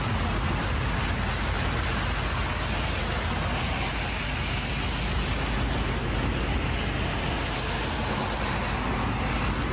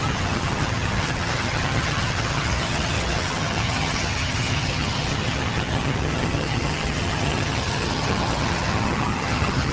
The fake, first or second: second